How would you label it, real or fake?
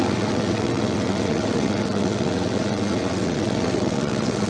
fake